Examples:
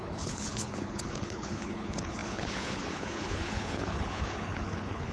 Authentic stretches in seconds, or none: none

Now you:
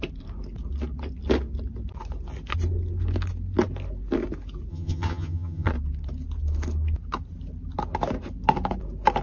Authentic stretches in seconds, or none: 0.0-4.7; 5.7-9.2

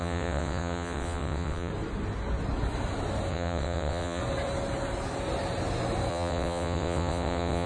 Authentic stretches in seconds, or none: 1.7-3.3; 4.2-6.1

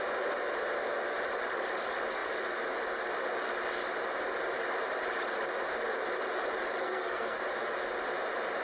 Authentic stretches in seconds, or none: 0.0-6.8; 7.4-8.6

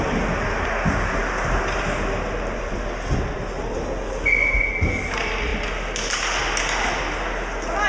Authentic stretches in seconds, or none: 0.0-1.2; 2.8-7.9

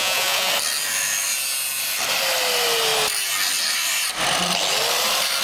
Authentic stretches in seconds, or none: 0.5-5.4

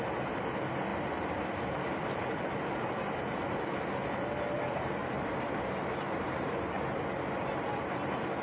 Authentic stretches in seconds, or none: 0.0-0.9; 2.9-5.0; 6.6-8.4